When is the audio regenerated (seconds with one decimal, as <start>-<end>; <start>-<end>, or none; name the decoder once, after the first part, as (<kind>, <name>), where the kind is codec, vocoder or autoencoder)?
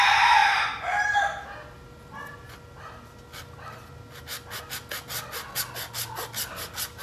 none